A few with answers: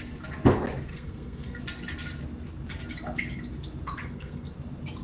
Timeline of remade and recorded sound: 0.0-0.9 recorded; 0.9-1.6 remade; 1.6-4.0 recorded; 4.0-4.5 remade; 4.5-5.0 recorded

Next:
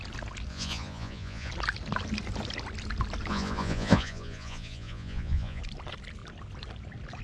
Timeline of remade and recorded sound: 0.0-0.5 recorded; 0.5-1.5 remade; 1.5-3.3 recorded; 3.3-5.6 remade; 5.6-7.2 recorded